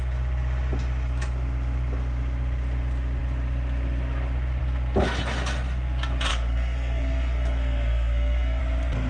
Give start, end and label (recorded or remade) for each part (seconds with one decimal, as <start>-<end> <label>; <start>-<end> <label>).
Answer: 0.0-6.3 recorded; 6.3-8.6 remade; 8.6-9.1 recorded